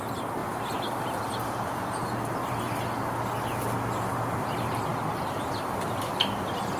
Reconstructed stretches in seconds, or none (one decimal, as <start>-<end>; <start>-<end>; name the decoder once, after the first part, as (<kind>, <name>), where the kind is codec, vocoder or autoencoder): none